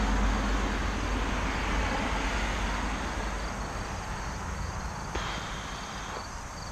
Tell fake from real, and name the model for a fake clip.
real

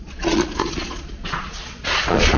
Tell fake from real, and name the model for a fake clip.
fake, vocoder, Vocos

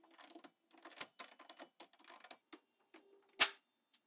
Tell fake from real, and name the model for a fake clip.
real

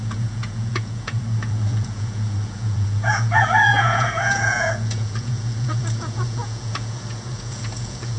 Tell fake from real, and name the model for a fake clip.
fake, vocoder, Vocos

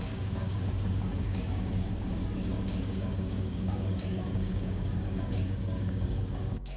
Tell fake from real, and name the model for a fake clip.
fake, codec, DAC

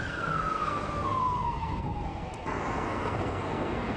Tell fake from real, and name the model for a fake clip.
fake, codec, SNAC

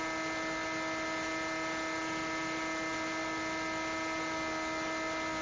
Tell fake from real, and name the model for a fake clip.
real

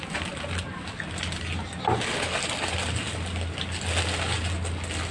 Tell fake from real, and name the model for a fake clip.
real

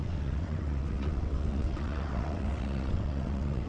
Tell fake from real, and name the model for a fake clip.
fake, vocoder, WaveNeXt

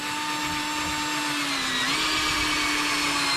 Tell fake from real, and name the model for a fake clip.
real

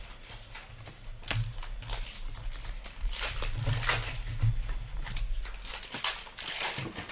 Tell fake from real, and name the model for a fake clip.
real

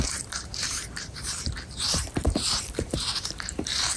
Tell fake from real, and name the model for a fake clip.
fake, vocoder, BigVGAN v2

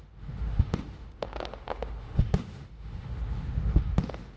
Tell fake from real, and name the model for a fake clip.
fake, autoencoder, DAC-VAE